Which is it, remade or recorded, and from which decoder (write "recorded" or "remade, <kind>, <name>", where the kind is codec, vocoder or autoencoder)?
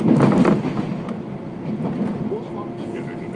recorded